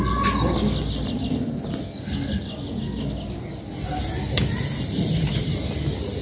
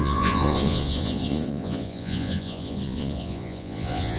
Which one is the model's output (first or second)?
second